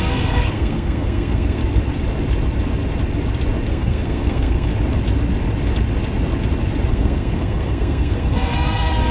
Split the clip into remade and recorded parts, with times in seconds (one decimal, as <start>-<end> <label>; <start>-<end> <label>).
0.0-1.6 remade; 1.6-3.7 recorded; 3.7-4.7 remade; 4.7-6.9 recorded; 6.9-9.1 remade